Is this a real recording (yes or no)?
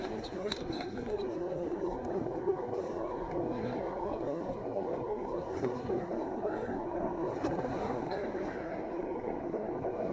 no